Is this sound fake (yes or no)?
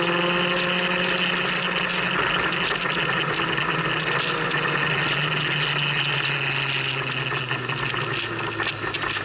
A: no